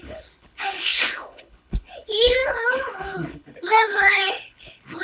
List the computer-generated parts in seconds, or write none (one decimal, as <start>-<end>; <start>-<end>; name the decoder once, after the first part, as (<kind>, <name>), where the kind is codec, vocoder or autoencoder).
0.0-5.0 (codec, HILCodec)